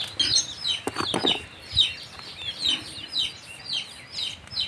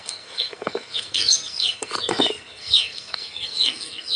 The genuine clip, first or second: first